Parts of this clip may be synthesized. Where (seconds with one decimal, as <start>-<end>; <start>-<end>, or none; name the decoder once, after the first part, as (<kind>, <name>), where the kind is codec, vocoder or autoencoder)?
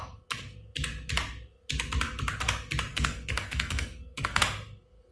2.9-4.4 (codec, SNAC)